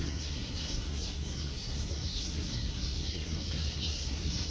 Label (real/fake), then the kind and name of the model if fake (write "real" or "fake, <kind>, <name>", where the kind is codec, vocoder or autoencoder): fake, codec, SNAC